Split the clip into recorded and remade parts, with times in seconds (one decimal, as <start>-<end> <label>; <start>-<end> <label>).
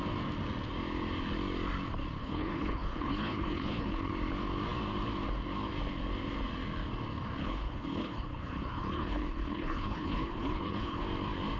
0.0-2.2 recorded; 2.2-4.1 remade; 4.1-7.4 recorded; 7.4-11.0 remade; 11.0-11.6 recorded